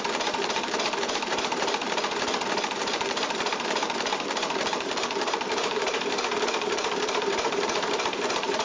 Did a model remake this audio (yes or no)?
yes